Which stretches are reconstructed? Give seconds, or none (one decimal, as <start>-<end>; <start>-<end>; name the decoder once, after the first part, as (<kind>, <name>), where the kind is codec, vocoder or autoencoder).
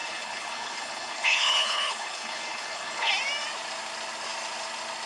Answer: 0.0-3.1 (codec, HILCodec)